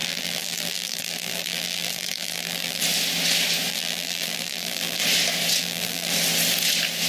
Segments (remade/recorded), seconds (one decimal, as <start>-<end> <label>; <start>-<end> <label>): 0.0-2.8 remade; 2.8-3.7 recorded; 3.7-5.0 remade; 5.0-5.6 recorded; 5.6-6.1 remade; 6.1-7.1 recorded